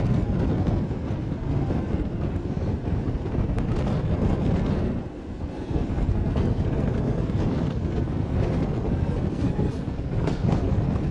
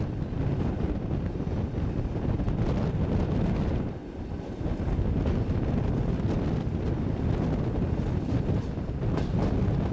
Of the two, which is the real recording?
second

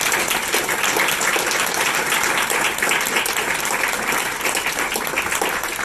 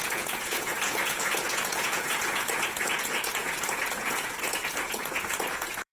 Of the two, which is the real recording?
first